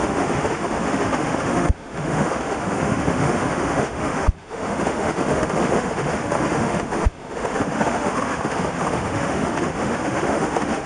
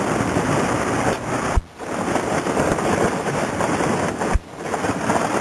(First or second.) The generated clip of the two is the first